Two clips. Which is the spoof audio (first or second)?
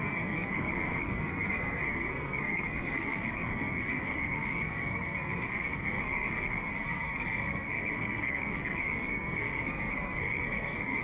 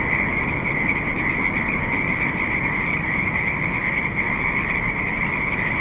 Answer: first